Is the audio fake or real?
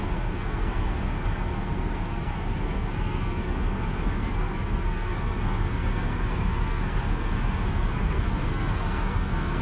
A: fake